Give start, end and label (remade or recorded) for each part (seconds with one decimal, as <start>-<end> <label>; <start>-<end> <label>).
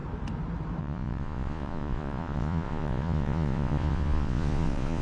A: 0.0-0.8 recorded; 0.8-5.0 remade